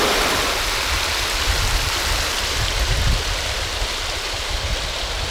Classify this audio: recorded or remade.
recorded